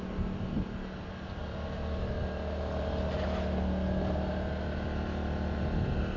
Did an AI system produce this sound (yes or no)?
no